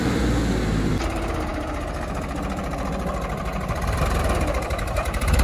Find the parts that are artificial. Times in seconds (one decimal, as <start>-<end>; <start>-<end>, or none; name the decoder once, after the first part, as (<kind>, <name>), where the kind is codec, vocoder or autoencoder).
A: 0.0-5.4 (vocoder, BigVGAN v2)